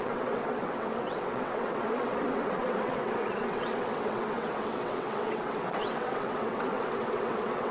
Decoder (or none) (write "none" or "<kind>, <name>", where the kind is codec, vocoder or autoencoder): vocoder, WaveNeXt